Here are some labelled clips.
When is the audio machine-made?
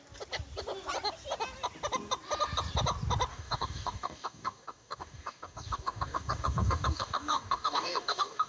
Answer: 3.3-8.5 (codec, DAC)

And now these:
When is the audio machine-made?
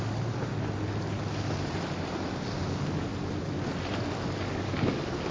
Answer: 0.0-0.5 (codec, DAC); 2.7-3.1; 4.5-5.3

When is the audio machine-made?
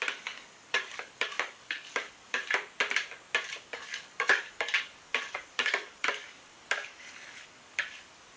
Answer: 0.0-2.4 (codec, DAC); 3.6-8.4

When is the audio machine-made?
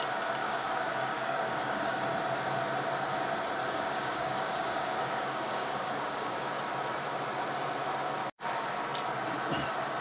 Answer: 0.4-2.0 (codec, DAC); 3.6-6.5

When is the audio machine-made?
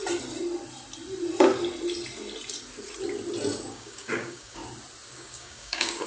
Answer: 3.7-4.6 (codec, DAC); 5.1-6.1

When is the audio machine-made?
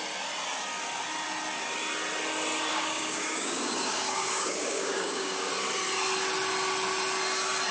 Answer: 2.7-5.5 (codec, DAC)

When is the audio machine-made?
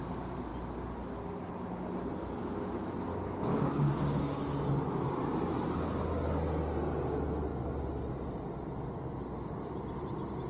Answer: 3.1-4.6 (codec, DAC)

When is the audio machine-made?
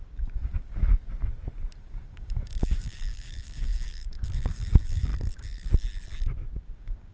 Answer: 0.0-0.8 (codec, DAC); 1.8-5.1; 6.6-7.1